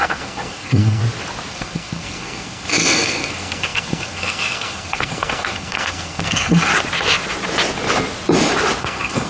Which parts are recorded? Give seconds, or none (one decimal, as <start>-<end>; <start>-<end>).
1.0-1.5; 6.7-8.8